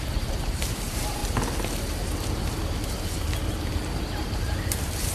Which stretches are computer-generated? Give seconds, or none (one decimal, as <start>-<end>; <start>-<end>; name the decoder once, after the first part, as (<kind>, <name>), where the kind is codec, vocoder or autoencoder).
0.0-1.2 (vocoder, BigVGAN v2); 3.0-5.1